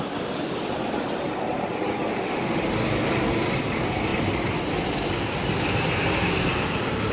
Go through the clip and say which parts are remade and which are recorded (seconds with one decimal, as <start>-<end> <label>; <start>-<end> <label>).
0.0-2.1 recorded; 2.1-2.6 remade; 2.6-7.1 recorded

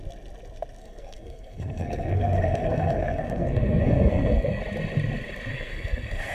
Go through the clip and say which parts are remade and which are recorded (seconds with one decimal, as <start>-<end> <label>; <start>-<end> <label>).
0.0-0.8 recorded; 0.8-4.6 remade; 4.6-5.5 recorded; 5.5-6.3 remade